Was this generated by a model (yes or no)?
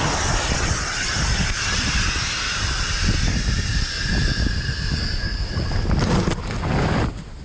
no